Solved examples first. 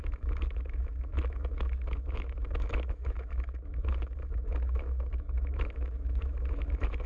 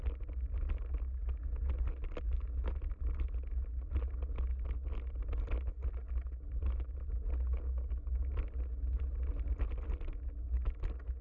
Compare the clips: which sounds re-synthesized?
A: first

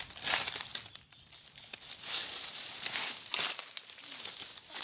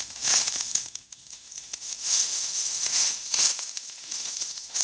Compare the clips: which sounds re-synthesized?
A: second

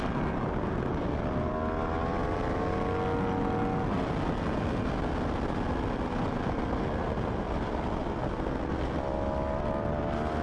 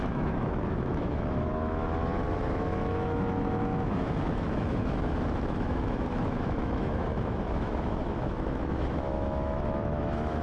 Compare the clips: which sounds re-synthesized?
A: second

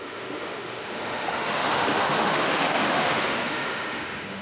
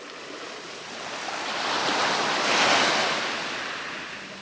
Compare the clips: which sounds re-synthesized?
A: first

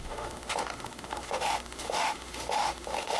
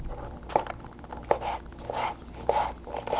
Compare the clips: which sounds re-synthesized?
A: first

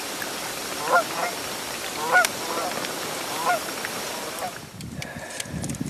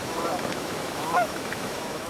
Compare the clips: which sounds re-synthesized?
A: second